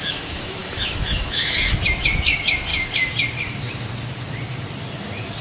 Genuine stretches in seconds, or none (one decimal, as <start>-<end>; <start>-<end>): 2.7-5.4